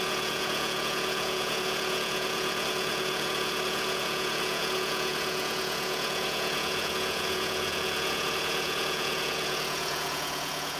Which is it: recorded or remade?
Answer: remade